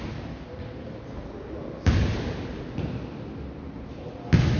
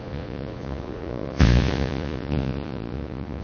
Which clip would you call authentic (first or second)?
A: first